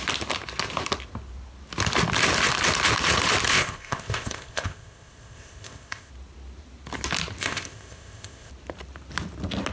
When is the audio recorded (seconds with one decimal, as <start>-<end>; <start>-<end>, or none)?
0.0-3.5; 6.1-7.4; 8.5-9.7